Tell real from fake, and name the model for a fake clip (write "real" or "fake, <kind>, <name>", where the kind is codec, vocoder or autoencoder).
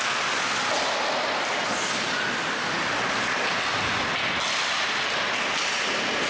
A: real